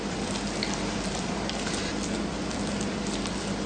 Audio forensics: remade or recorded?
remade